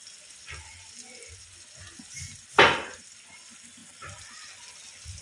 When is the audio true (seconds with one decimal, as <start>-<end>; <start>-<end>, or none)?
0.0-5.2